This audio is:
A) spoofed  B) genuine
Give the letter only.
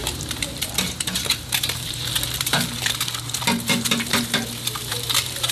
A